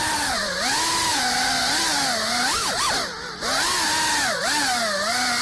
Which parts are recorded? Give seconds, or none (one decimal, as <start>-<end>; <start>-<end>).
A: 0.0-5.4